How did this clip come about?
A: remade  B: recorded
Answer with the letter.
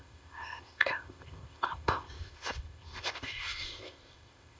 A